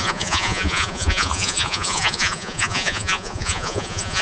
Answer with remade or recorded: remade